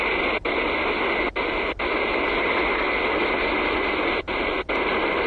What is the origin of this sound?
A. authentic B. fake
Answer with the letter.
A